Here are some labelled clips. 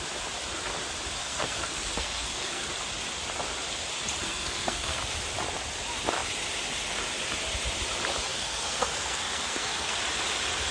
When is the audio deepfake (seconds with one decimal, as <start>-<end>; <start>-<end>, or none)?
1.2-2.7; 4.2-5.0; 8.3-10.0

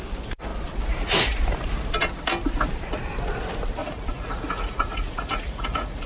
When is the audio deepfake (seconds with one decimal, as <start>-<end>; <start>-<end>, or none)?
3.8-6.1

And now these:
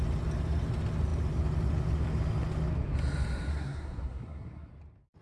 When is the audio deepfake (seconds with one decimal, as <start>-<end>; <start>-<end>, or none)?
3.5-4.7

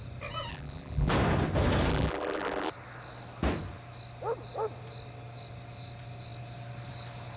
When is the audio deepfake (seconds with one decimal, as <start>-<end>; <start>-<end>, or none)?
0.5-1.1; 1.9-2.7